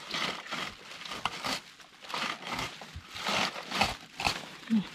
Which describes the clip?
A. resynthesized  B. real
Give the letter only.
B